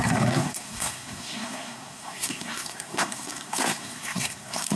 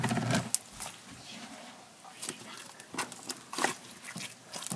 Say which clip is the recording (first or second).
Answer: second